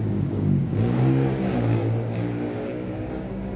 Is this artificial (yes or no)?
yes